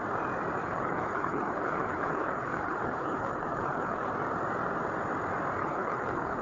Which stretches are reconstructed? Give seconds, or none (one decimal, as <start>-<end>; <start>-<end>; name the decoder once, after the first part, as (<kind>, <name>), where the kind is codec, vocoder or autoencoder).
0.6-4.1 (codec, HILCodec); 5.6-6.4